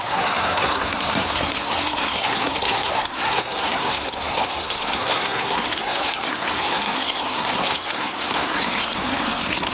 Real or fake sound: fake